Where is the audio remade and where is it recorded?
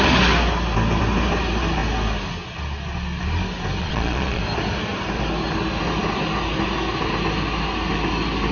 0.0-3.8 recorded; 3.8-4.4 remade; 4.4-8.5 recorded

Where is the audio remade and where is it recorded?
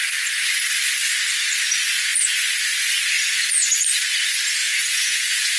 0.0-4.6 recorded; 4.6-5.6 remade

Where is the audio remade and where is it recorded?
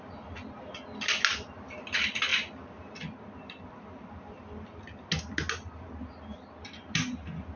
0.0-7.6 recorded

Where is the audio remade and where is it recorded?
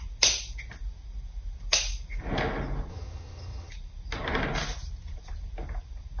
0.0-2.9 recorded; 2.9-3.7 remade; 3.7-6.2 recorded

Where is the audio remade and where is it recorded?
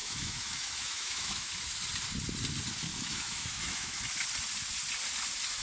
0.0-1.5 remade; 1.5-2.9 recorded; 2.9-4.0 remade; 4.0-5.6 recorded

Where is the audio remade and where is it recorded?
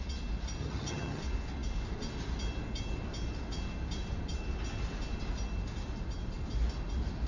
0.0-0.6 recorded; 0.6-1.2 remade; 1.2-7.3 recorded